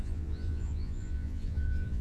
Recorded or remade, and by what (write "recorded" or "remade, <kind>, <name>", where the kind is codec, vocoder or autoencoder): remade, vocoder, Vocos